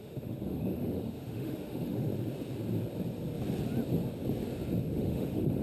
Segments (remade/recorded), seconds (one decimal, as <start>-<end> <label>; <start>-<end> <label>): 0.0-2.1 remade; 2.1-4.8 recorded; 4.8-5.6 remade